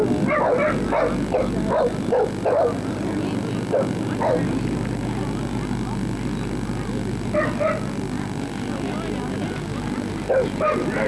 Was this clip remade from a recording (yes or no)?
no